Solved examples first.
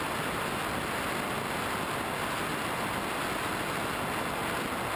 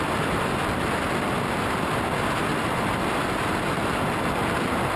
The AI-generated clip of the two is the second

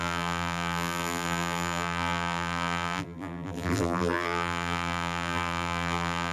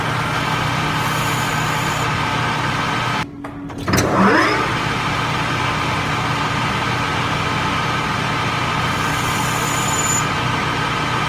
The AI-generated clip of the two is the first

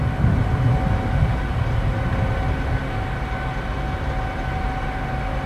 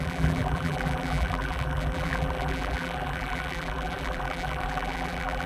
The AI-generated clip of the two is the second